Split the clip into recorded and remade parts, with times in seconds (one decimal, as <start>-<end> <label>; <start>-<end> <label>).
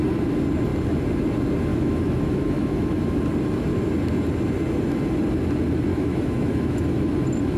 0.0-1.7 recorded; 1.7-3.2 remade; 3.2-5.9 recorded; 5.9-7.1 remade; 7.1-7.6 recorded